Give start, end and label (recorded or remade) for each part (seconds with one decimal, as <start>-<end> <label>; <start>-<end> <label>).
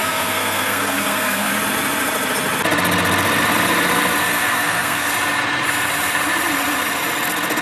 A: 0.0-1.5 remade; 1.5-4.2 recorded; 4.2-5.1 remade; 5.1-7.6 recorded